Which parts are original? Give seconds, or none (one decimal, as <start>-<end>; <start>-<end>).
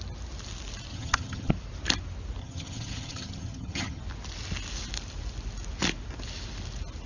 0.0-0.9; 1.5-2.4; 4.0-7.1